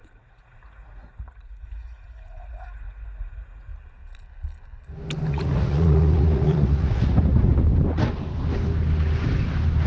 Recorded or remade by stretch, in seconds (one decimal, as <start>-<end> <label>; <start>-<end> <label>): 0.0-3.7 remade; 3.7-5.3 recorded; 5.3-7.5 remade; 7.5-9.9 recorded

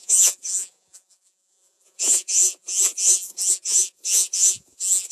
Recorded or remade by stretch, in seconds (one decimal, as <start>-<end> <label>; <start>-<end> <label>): 0.0-5.1 remade

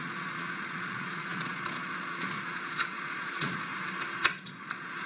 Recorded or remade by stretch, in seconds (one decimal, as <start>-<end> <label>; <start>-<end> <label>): 0.0-3.7 remade; 3.7-4.4 recorded; 4.4-5.1 remade